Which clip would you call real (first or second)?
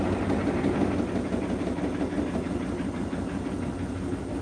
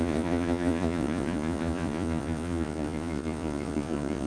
first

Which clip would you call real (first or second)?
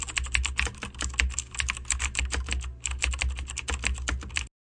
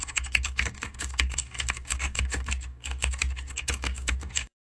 first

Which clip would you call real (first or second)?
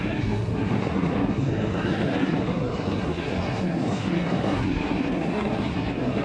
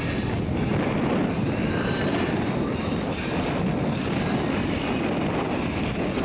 second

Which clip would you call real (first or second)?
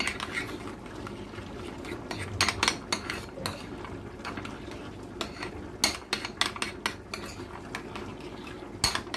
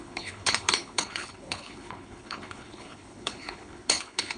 first